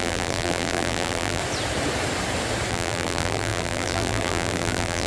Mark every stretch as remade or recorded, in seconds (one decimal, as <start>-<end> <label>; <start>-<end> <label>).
0.0-1.4 remade; 1.4-2.7 recorded; 2.7-5.1 remade